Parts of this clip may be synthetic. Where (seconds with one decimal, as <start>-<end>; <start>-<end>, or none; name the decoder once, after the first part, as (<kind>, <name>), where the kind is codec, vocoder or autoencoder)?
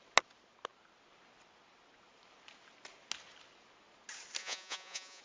4.4-5.2 (vocoder, Vocos)